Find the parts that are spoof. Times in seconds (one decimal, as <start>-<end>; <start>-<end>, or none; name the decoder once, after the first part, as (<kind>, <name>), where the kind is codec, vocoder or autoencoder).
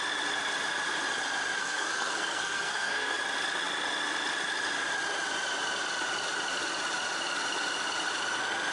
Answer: 1.6-3.2 (codec, SNAC)